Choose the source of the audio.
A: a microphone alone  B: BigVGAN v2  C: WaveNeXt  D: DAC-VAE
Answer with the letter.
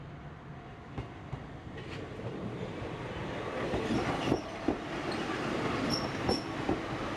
A